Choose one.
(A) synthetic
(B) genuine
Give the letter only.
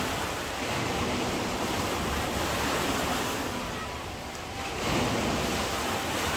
B